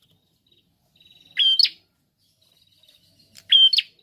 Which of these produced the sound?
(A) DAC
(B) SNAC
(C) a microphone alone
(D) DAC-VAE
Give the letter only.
C